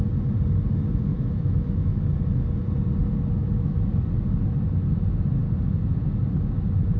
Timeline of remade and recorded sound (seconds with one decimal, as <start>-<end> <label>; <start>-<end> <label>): 0.0-1.1 recorded; 1.1-2.0 remade; 2.0-3.4 recorded; 3.4-4.0 remade; 4.0-7.0 recorded